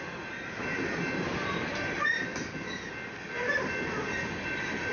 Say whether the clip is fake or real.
real